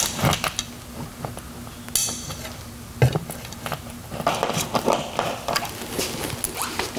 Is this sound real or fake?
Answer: real